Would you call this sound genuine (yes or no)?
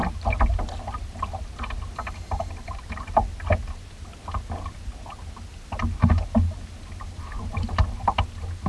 yes